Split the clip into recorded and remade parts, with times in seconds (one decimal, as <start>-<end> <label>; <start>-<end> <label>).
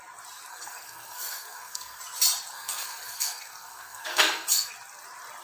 0.0-0.5 recorded; 0.5-2.0 remade; 2.0-2.5 recorded; 2.5-4.7 remade; 4.7-5.4 recorded